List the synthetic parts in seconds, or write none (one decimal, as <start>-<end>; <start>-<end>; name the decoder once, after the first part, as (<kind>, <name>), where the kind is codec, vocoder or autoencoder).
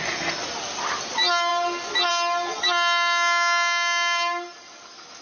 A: none